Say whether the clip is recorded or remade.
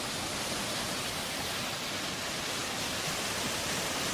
recorded